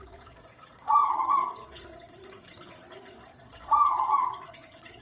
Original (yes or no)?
no